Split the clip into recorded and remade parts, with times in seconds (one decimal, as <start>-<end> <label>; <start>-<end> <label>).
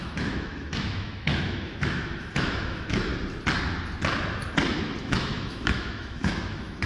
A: 0.0-3.1 remade; 3.1-5.0 recorded; 5.0-6.9 remade